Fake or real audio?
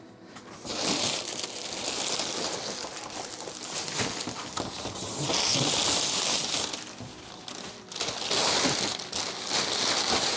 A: real